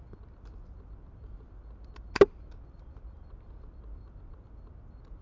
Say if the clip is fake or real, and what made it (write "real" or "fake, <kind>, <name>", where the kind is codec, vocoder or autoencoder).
real